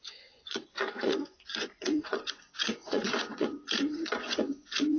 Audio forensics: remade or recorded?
remade